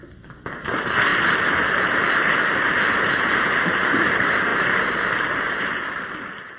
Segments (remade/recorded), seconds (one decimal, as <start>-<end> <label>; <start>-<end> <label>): 0.0-6.6 remade